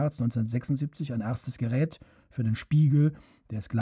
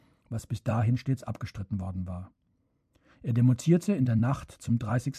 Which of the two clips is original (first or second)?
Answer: first